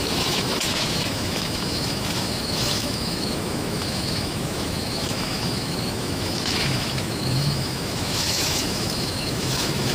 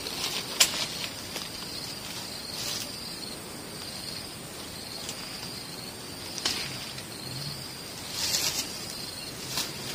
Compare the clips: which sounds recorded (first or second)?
second